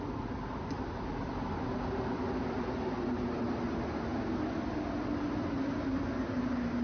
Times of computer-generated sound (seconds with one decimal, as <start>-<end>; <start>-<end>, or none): none